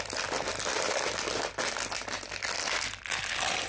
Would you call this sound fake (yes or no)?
no